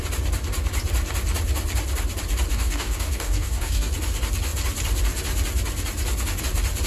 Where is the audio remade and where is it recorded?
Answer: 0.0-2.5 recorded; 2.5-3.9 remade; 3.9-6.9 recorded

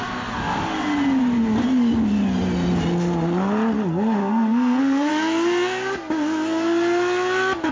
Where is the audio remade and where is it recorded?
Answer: 0.0-4.2 recorded; 4.2-5.1 remade; 5.1-7.7 recorded

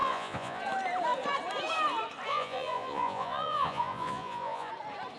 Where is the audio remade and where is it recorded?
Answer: 0.0-0.6 remade; 0.6-2.3 recorded; 2.3-4.7 remade; 4.7-5.2 recorded

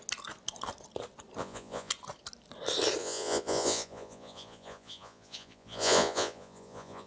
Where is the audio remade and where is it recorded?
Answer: 0.0-1.4 recorded; 1.4-1.9 remade; 1.9-3.0 recorded; 3.0-7.1 remade